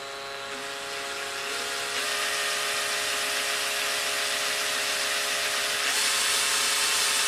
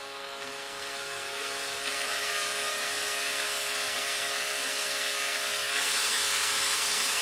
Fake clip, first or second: second